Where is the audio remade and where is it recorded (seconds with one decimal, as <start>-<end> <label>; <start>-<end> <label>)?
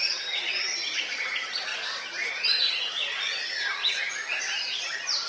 0.0-1.7 remade; 1.7-2.6 recorded; 2.6-5.3 remade